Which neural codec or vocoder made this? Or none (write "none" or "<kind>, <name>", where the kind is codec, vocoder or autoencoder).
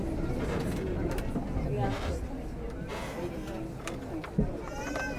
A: none